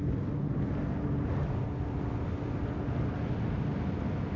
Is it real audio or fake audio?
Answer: real